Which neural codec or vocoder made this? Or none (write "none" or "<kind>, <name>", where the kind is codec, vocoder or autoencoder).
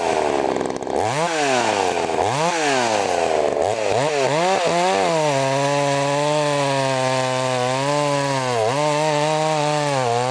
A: none